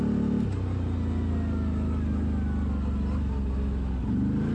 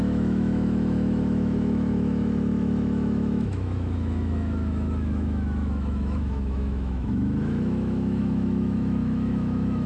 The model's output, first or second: second